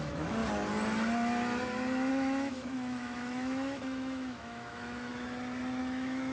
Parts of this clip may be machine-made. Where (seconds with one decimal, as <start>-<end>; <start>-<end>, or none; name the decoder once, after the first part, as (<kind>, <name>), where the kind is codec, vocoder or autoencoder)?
0.0-0.4 (autoencoder, DAC-VAE); 2.1-5.1; 5.8-6.3